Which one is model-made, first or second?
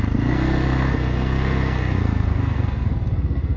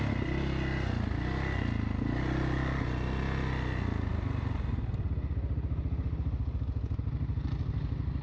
first